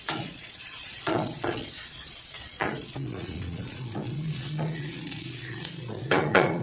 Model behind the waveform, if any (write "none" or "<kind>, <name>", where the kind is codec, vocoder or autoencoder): vocoder, Vocos